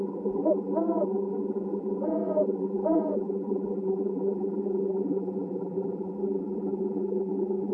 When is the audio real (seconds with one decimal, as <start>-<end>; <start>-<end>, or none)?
none